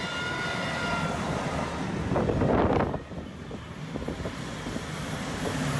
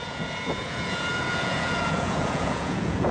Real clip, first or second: first